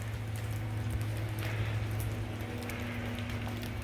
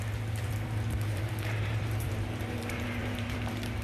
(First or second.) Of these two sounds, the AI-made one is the second